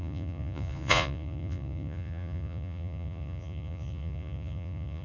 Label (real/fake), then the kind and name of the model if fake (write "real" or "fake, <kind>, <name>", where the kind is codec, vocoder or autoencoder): fake, vocoder, Vocos